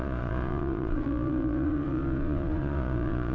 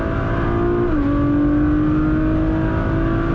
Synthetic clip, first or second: first